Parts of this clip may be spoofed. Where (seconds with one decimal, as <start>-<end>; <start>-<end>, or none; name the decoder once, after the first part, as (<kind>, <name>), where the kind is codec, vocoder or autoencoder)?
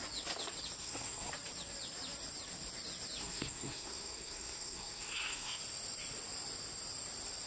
0.8-1.3 (codec, SNAC); 3.2-5.6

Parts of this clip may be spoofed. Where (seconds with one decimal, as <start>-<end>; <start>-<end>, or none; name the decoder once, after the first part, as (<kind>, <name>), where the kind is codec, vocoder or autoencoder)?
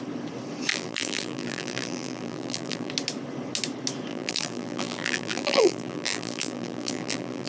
0.7-2.9 (vocoder, BigVGAN v2); 4.1-7.5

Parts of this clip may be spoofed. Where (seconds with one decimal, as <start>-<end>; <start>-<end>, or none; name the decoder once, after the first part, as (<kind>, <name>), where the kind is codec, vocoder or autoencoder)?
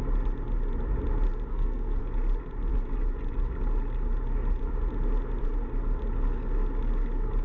1.5-2.0 (codec, SNAC)